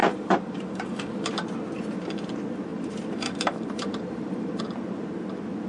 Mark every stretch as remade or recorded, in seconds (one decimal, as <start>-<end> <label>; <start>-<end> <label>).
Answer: 0.0-1.3 remade; 1.3-2.7 recorded; 2.7-4.6 remade; 4.6-5.7 recorded